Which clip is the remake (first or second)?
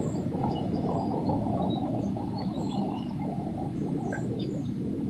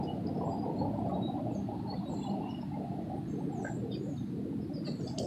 first